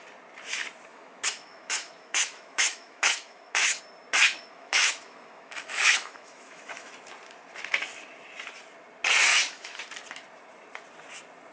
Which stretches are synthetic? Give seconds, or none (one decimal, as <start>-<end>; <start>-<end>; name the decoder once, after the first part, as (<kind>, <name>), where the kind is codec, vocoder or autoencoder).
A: 0.9-3.8 (autoencoder, DAC-VAE); 4.2-6.9; 9.3-9.8